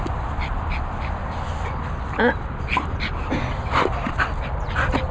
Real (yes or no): yes